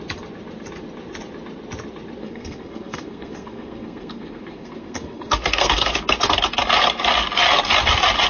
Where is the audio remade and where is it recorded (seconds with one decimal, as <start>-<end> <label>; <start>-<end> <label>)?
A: 0.0-2.2 recorded; 2.2-5.9 remade; 5.9-8.3 recorded